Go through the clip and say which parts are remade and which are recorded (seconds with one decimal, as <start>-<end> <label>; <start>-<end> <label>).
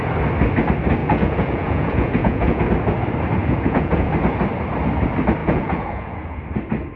0.0-1.0 recorded; 1.0-2.6 remade; 2.6-3.4 recorded; 3.4-4.1 remade; 4.1-5.4 recorded; 5.4-6.4 remade; 6.4-7.0 recorded